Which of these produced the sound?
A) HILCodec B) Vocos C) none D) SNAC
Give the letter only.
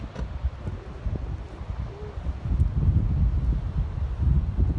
C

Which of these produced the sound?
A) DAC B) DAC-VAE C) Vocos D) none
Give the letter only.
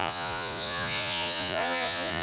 C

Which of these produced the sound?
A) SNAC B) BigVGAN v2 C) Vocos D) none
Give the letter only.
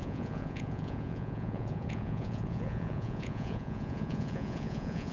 C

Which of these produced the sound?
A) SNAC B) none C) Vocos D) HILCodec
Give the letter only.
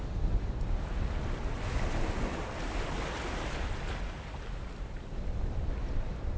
B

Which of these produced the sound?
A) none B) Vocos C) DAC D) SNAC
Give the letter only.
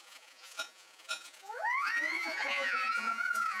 B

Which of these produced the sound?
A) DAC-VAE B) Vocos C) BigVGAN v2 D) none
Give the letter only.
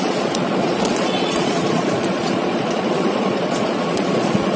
B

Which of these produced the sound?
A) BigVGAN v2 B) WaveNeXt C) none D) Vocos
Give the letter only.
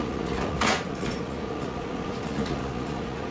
D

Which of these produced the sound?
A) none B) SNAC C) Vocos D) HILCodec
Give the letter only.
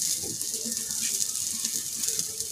A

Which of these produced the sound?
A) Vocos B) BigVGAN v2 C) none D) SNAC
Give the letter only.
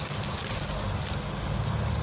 C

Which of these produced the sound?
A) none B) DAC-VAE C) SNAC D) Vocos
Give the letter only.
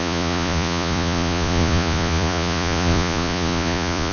D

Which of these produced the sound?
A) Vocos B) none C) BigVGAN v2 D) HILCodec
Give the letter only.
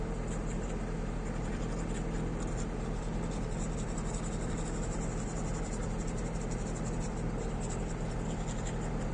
B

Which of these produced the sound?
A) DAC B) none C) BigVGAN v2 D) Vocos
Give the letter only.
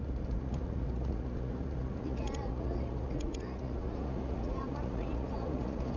D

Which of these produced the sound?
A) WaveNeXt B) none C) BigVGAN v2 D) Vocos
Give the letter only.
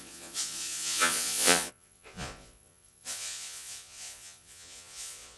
D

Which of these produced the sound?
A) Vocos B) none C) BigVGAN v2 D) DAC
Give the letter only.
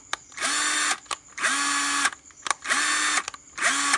B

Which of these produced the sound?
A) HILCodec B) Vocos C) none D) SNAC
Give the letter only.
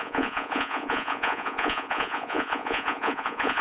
B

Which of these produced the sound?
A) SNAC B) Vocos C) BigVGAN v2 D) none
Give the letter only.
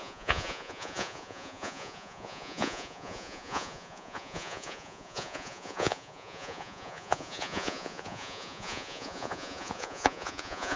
B